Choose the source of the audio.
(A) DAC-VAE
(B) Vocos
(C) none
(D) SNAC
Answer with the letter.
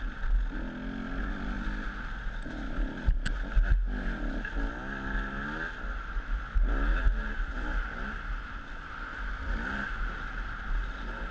C